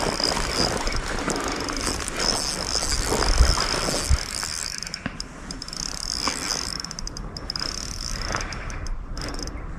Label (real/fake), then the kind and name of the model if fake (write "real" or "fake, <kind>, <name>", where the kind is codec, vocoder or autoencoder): real